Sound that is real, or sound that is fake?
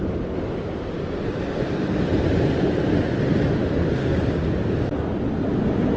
real